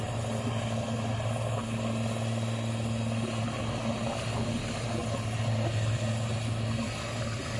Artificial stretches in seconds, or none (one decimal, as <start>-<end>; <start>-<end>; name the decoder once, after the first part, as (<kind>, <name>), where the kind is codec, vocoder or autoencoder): none